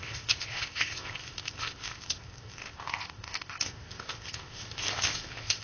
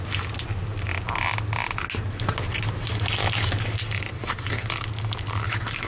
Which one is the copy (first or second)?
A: first